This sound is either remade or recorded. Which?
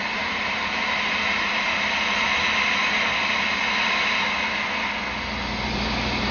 recorded